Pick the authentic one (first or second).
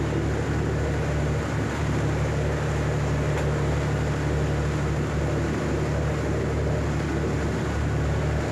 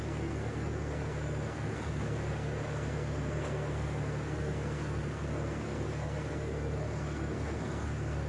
first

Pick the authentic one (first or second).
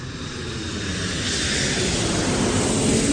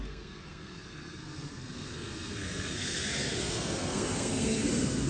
first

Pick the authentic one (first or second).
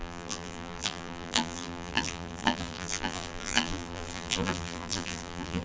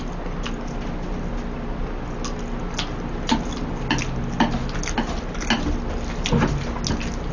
second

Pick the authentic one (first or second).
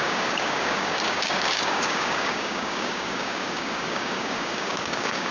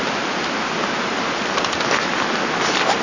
second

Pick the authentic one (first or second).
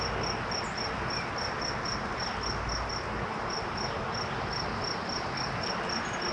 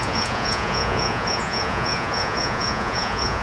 first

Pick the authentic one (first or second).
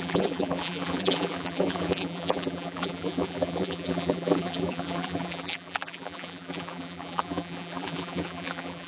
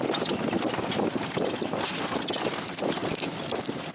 second